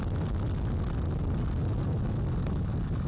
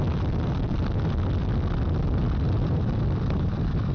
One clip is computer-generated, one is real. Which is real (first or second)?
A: first